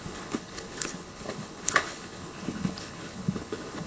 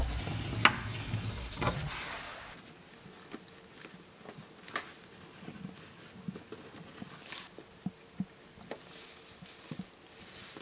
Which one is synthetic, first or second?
first